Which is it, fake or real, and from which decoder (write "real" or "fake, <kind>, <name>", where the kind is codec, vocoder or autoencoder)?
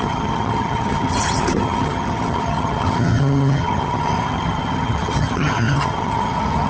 fake, vocoder, HiFi-GAN